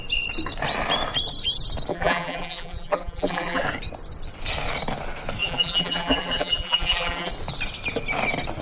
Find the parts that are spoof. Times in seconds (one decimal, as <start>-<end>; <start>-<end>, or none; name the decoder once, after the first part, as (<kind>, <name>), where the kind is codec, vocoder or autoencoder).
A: 1.9-3.6 (vocoder, BigVGAN v2); 5.4-7.3